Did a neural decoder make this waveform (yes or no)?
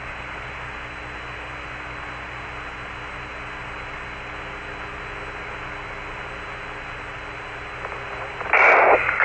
no